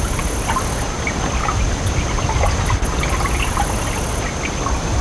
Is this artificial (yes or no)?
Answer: no